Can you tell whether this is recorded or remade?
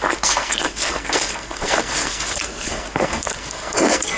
remade